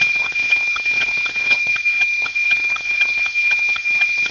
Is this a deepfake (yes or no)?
yes